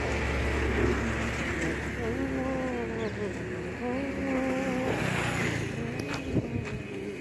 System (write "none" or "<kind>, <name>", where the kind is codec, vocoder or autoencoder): none